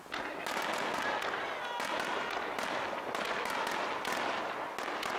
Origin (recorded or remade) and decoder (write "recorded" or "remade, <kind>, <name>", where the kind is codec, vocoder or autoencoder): recorded